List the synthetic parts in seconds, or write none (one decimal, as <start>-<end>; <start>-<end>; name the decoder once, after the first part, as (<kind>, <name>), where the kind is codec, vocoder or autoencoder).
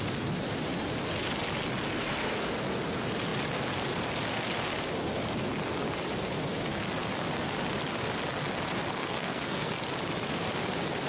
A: 9.0-9.8 (codec, SNAC)